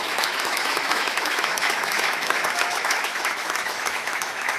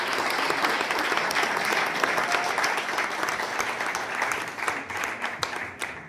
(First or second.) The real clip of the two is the second